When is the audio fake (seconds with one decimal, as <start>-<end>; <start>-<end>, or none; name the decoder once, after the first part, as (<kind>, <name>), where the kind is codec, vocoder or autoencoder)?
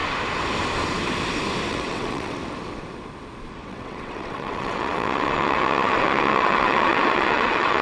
1.7-2.4 (vocoder, WaveNeXt); 3.5-7.8